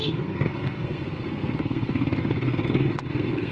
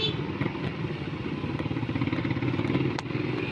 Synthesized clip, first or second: first